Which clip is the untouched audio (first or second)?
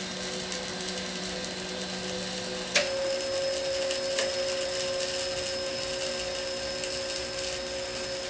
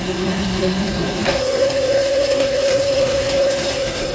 first